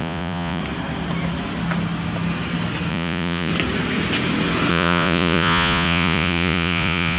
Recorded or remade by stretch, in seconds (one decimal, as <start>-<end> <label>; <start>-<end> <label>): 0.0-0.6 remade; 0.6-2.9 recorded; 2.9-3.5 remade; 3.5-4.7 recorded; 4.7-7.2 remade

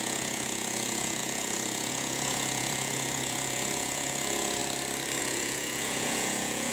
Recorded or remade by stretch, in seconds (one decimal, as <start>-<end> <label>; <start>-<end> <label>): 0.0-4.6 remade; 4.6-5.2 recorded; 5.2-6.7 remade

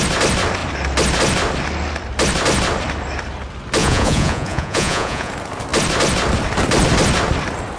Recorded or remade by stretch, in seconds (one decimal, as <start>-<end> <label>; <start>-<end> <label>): 0.0-3.8 recorded; 3.8-5.3 remade; 5.3-7.8 recorded